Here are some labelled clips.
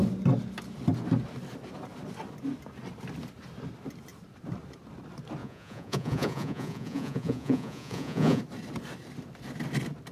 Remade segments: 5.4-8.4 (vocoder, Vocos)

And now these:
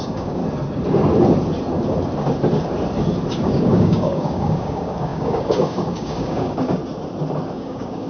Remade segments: 0.0-0.4 (codec, DAC); 3.3-6.8; 7.5-8.1